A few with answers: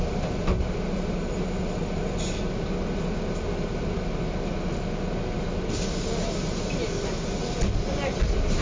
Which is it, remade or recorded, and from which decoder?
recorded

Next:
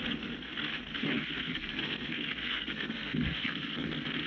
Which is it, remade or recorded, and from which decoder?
remade, codec, SNAC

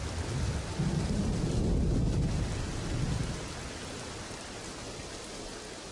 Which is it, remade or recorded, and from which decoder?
recorded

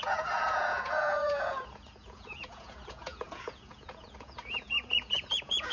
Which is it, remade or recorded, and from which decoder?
remade, vocoder, Vocos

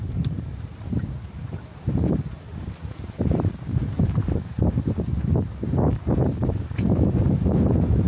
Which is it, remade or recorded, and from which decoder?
remade, vocoder, BigVGAN v2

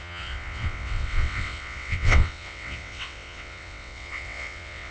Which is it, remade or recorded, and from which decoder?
remade, vocoder, WaveNeXt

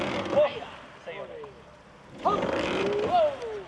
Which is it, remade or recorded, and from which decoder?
recorded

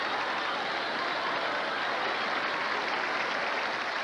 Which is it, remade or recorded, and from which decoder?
recorded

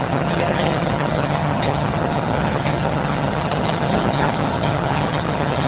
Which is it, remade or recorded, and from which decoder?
remade, vocoder, HiFi-GAN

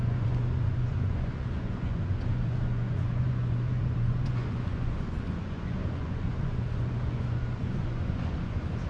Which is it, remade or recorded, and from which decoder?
remade, vocoder, Vocos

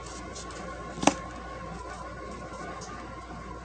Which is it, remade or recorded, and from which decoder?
recorded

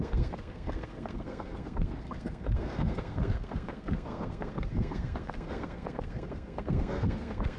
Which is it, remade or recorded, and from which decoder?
remade, codec, SNAC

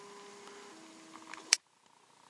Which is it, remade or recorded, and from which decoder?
recorded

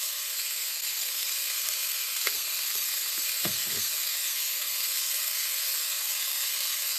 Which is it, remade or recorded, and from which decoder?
remade, codec, SNAC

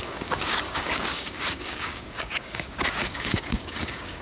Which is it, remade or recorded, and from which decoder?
remade, codec, DAC